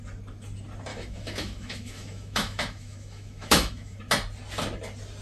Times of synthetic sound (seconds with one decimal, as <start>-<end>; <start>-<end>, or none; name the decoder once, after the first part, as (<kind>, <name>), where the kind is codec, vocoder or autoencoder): 0.9-4.0 (autoencoder, DAC-VAE)

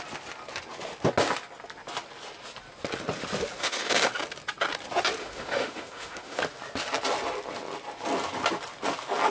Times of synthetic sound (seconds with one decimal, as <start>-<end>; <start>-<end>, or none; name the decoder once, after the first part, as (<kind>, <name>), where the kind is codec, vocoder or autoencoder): 3.6-4.1 (autoencoder, DAC-VAE); 5.2-6.4

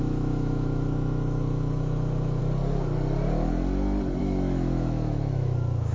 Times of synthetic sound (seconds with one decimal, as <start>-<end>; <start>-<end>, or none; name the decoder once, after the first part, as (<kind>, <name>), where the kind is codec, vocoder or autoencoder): 0.0-2.4 (autoencoder, DAC-VAE); 4.2-5.9